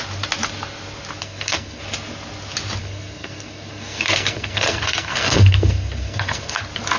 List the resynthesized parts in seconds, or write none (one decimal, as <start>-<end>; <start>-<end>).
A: 1.2-1.8; 2.8-6.6